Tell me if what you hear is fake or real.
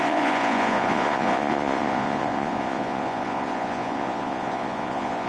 fake